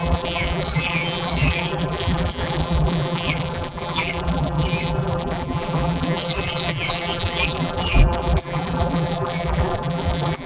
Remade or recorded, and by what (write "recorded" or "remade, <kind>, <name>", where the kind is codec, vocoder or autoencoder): remade, vocoder, BigVGAN v2